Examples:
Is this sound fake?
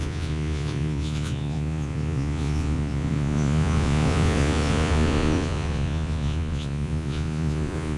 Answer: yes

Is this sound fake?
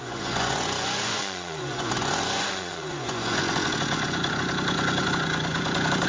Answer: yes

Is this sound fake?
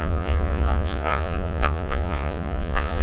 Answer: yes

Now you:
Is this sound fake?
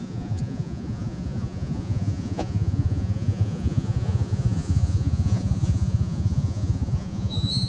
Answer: yes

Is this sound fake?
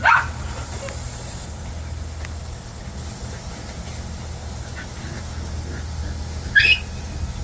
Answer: no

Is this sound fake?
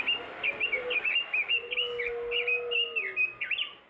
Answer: no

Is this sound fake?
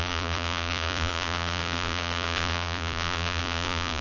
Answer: yes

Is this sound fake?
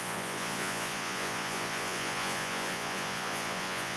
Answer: yes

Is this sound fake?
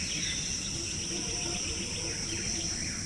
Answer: no